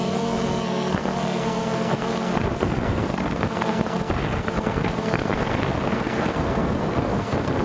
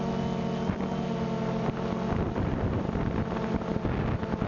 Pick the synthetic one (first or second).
first